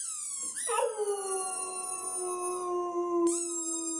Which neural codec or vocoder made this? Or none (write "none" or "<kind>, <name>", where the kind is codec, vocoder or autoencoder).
none